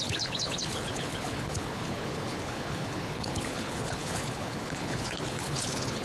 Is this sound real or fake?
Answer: fake